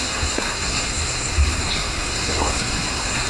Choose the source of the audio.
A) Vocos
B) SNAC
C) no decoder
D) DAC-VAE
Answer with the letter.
B